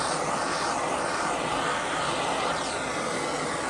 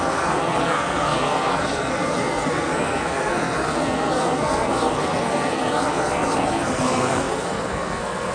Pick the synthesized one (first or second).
second